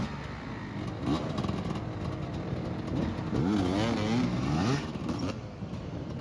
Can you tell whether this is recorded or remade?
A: recorded